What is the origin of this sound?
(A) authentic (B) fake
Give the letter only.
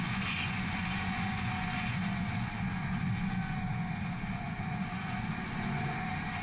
B